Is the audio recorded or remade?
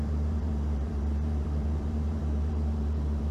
remade